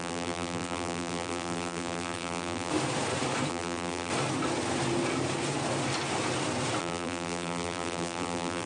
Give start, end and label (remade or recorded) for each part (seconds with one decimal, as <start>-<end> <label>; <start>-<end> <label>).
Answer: 0.0-2.7 remade; 2.7-3.5 recorded; 3.5-4.1 remade; 4.1-6.8 recorded; 6.8-8.7 remade